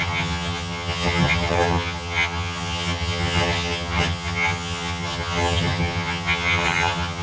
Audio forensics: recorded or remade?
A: remade